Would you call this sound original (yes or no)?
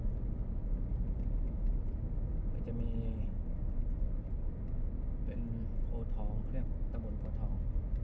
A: yes